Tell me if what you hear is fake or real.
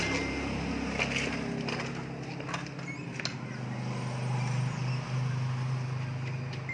real